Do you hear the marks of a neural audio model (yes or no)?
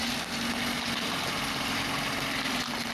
no